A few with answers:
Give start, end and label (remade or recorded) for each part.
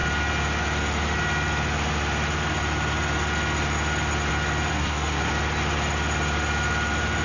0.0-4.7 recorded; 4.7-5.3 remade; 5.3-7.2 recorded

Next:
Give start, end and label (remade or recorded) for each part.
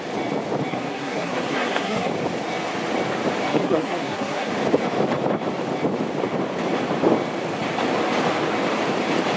0.0-0.7 recorded; 0.7-2.1 remade; 2.1-3.5 recorded; 3.5-4.5 remade; 4.5-9.4 recorded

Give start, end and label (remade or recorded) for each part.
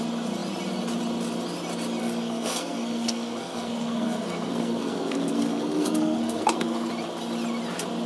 0.0-2.0 recorded; 2.0-6.9 remade; 6.9-8.1 recorded